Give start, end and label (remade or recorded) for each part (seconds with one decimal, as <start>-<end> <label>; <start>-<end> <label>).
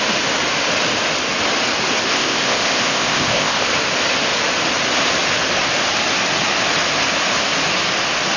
0.0-2.1 recorded; 2.1-3.7 remade; 3.7-8.4 recorded